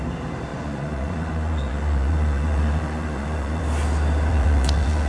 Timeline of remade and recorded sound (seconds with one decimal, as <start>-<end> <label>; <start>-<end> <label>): 0.0-0.5 recorded; 0.5-3.6 remade; 3.6-4.3 recorded; 4.3-5.1 remade